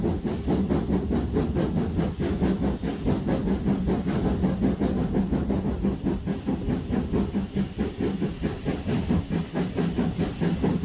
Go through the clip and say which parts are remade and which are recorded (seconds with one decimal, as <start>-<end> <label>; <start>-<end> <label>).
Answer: 0.0-10.8 recorded